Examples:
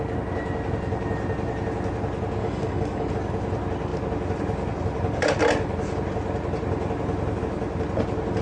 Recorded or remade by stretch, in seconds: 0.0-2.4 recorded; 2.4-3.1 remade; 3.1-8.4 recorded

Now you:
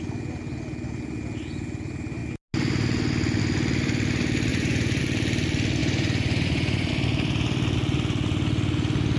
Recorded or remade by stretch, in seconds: 0.0-4.5 recorded; 4.5-5.0 remade; 5.0-5.8 recorded; 5.8-6.9 remade; 6.9-9.2 recorded

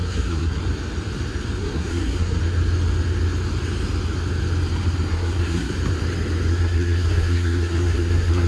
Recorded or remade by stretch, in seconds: 0.0-0.6 remade; 0.6-1.6 recorded; 1.6-2.4 remade; 2.4-5.1 recorded; 5.1-5.7 remade; 5.7-6.5 recorded; 6.5-8.5 remade